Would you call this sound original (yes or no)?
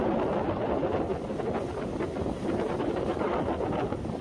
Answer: yes